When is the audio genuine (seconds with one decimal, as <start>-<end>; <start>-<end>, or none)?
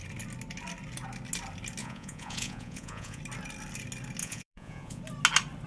0.0-1.8; 3.2-4.2; 5.0-5.7